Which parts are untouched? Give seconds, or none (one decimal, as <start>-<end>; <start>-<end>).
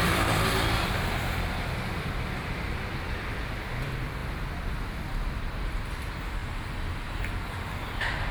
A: 4.2-5.0; 6.4-7.8